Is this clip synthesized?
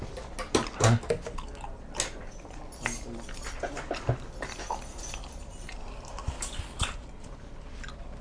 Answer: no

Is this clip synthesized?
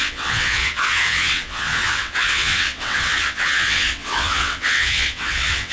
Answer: yes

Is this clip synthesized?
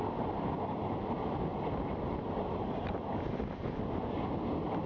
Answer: no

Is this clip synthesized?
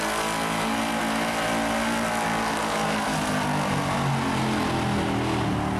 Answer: no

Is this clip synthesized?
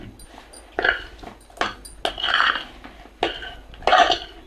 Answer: no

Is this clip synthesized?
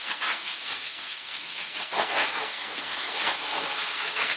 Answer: yes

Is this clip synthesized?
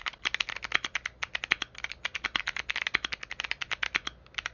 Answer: no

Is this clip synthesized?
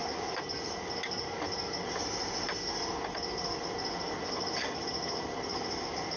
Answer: no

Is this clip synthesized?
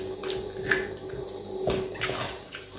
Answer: no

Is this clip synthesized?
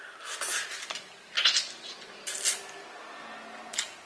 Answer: no